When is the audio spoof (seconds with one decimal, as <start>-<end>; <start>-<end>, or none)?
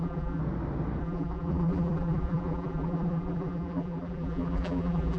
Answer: 0.0-0.4; 1.0-5.2